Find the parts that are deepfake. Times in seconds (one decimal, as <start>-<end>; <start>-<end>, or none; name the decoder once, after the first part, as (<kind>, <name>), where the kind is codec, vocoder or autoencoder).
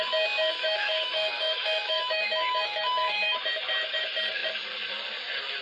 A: 0.6-4.0 (autoencoder, DAC-VAE)